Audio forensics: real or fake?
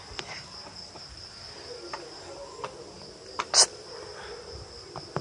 real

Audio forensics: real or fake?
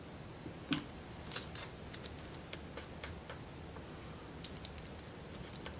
real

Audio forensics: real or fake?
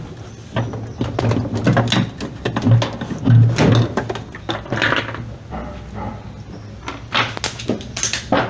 real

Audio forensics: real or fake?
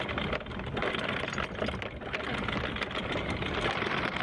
real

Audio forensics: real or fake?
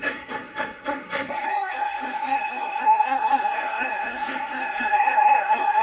fake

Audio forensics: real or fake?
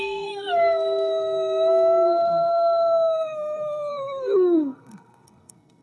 fake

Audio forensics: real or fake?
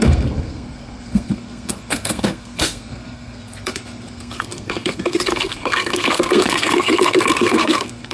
fake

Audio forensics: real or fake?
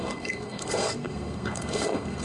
fake